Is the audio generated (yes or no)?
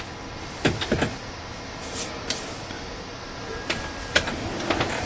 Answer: no